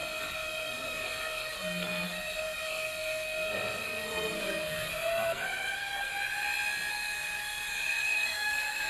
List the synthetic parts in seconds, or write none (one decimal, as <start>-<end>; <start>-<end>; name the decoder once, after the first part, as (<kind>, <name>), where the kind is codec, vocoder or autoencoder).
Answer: 0.0-6.1 (codec, SNAC); 6.9-8.9